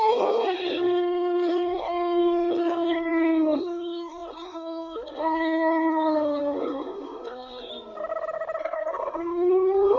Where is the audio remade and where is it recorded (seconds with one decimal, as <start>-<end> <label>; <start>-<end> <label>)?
0.0-7.7 remade; 7.7-8.6 recorded; 8.6-10.0 remade